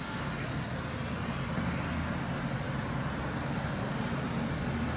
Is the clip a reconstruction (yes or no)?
no